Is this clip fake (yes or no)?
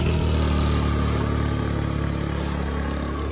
no